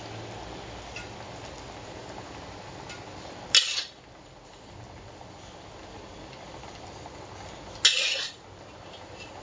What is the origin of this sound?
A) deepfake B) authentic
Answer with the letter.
B